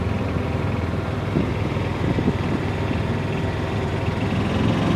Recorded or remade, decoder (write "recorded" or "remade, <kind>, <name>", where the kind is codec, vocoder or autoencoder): recorded